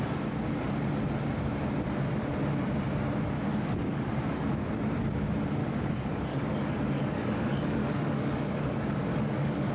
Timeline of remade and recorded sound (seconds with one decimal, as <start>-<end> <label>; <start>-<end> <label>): 0.0-3.5 recorded; 3.5-4.1 remade; 4.1-5.6 recorded; 5.6-9.7 remade